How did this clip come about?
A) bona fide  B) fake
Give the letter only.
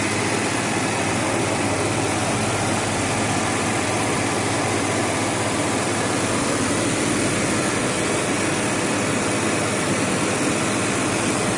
A